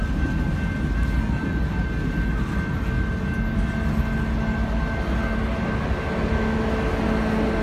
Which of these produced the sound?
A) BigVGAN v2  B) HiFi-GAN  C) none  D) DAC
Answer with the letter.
C